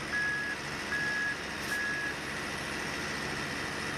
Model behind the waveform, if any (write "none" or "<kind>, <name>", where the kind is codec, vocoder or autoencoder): none